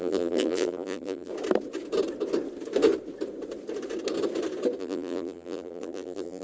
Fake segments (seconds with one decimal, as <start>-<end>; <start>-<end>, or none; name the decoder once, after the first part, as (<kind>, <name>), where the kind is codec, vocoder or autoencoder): 0.0-1.3 (vocoder, BigVGAN v2); 4.8-6.4